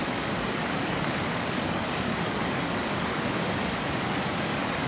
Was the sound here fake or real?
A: fake